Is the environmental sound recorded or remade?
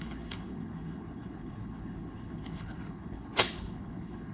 remade